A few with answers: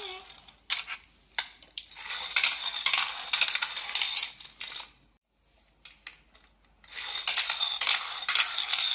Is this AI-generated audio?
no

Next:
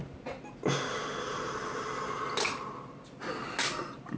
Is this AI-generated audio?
no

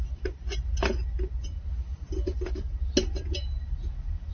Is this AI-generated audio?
no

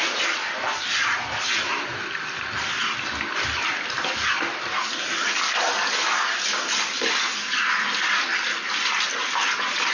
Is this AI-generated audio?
no